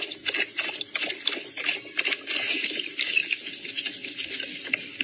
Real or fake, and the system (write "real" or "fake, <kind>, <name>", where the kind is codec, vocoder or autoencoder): real